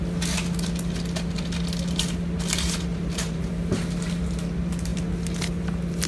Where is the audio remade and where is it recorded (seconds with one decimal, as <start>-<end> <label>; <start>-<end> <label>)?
0.0-2.9 recorded; 2.9-3.7 remade; 3.7-6.1 recorded